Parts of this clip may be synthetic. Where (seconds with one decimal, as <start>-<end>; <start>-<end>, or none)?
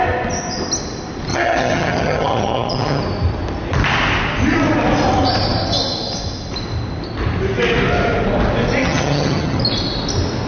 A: 1.3-3.0; 8.8-9.6